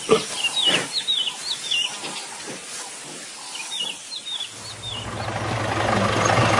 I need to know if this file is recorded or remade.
recorded